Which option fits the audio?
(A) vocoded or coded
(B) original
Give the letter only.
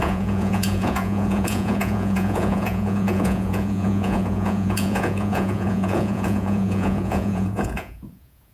A